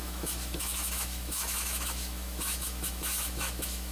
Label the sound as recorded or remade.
remade